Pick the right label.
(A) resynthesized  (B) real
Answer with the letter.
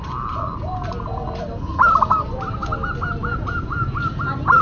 B